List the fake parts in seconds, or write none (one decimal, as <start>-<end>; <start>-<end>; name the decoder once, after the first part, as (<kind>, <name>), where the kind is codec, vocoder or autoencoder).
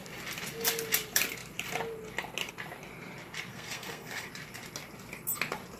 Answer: 3.5-4.3 (codec, SNAC)